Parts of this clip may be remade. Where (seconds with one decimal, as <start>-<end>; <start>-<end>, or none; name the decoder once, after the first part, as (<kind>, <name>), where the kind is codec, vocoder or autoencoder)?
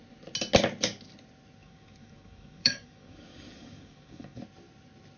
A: 1.6-4.4 (codec, DAC)